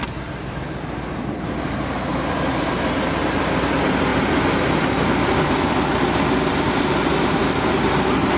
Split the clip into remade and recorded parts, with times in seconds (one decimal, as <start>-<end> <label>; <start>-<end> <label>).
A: 0.0-8.4 recorded